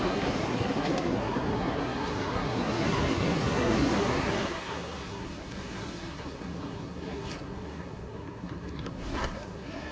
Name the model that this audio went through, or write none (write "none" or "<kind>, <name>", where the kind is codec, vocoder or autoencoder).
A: codec, SNAC